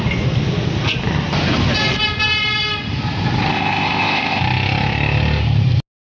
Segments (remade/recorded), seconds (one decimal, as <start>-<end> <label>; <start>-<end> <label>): 0.0-3.5 recorded; 3.5-4.4 remade; 4.4-6.1 recorded